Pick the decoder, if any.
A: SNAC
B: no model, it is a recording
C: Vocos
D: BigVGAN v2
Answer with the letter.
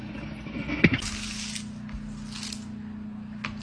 B